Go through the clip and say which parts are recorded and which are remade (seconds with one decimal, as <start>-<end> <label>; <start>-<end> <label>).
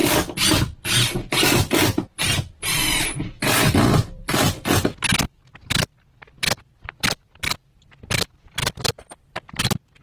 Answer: 0.0-1.7 recorded; 1.7-10.0 remade